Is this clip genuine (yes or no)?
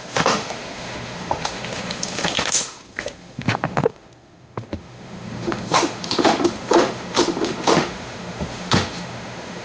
no